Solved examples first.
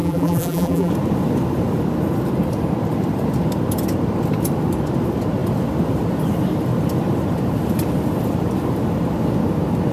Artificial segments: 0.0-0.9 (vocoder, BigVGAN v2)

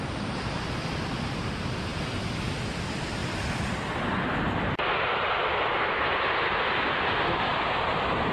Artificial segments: 0.0-8.3 (vocoder, BigVGAN v2)

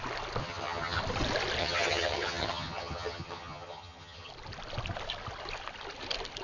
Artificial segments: 0.4-1.0 (vocoder, HiFi-GAN); 1.6-4.3

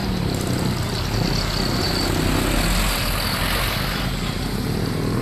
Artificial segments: none

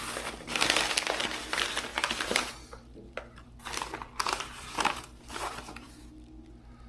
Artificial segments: 1.9-5.9 (vocoder, BigVGAN v2)